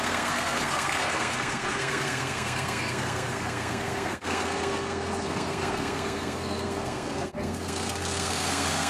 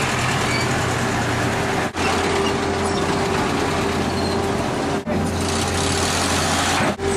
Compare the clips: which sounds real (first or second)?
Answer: second